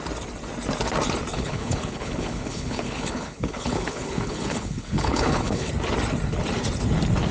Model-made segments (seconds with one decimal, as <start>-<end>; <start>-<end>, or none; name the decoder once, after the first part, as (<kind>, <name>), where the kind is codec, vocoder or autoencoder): 1.3-5.7 (codec, HILCodec)